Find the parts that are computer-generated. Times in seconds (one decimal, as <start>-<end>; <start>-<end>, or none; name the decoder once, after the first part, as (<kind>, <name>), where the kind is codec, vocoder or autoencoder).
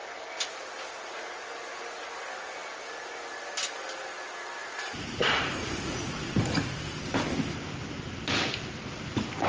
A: 4.6-7.0 (vocoder, Vocos)